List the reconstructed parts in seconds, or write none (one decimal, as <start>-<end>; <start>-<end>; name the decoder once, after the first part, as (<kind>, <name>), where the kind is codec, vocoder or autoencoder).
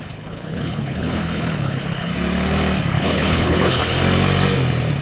0.0-2.1 (codec, HILCodec); 2.9-3.9